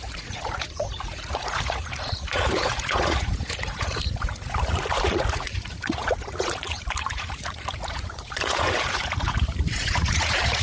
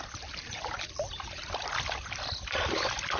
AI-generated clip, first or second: first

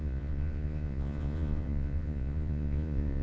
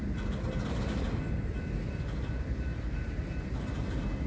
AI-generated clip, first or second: first